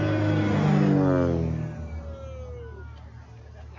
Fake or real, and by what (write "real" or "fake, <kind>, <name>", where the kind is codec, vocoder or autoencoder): real